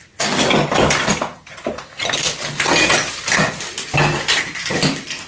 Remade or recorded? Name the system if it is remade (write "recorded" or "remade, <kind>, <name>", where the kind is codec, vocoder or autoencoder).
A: recorded